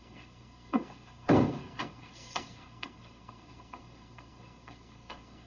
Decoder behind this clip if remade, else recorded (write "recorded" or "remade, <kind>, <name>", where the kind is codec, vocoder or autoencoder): remade, codec, SNAC